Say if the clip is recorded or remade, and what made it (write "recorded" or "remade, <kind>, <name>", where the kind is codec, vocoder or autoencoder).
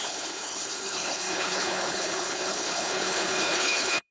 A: remade, codec, HILCodec